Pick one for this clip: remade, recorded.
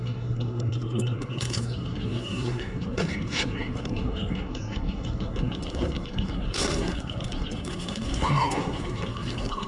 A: remade